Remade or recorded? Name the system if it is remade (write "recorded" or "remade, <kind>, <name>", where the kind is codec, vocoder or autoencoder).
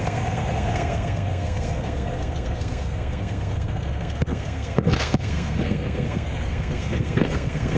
remade, codec, SNAC